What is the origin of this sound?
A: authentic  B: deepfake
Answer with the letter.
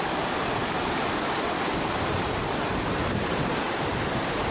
A